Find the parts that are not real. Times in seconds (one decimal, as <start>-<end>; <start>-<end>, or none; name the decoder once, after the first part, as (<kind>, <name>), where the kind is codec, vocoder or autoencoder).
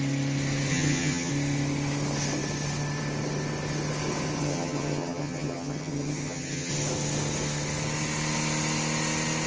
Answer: 0.7-1.3 (vocoder, HiFi-GAN); 4.4-6.7